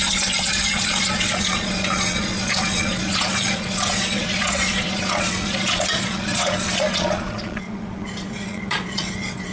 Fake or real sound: fake